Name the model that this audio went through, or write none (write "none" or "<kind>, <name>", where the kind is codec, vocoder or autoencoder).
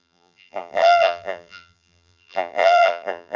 vocoder, BigVGAN v2